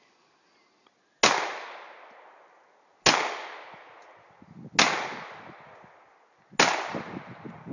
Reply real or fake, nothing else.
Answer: real